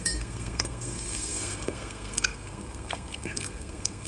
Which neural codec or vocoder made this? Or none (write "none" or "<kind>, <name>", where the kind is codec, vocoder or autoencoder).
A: codec, SNAC